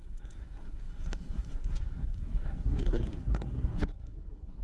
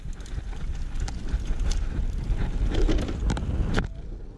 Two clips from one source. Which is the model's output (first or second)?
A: first